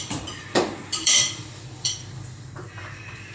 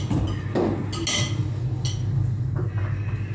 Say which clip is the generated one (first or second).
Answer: first